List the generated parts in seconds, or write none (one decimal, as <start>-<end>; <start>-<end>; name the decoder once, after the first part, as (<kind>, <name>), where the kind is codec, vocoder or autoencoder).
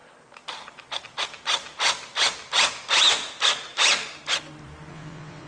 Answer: 4.9-5.5 (vocoder, WaveNeXt)